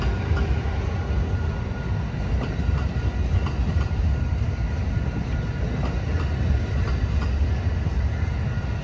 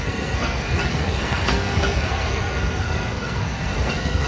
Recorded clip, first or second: first